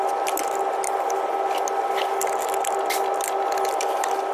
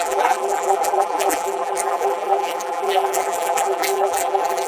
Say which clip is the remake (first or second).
second